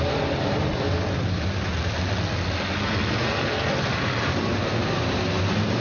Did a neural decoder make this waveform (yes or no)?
no